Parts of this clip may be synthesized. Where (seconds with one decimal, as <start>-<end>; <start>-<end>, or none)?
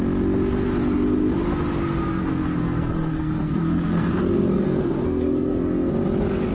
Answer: 2.0-5.9